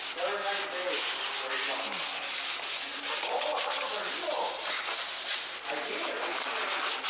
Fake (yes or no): no